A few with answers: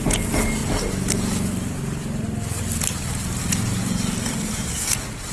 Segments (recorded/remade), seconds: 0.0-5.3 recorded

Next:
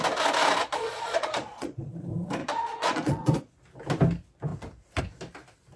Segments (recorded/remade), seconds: 0.0-0.6 recorded; 0.6-1.9 remade; 1.9-2.4 recorded; 2.4-3.5 remade; 3.5-5.8 recorded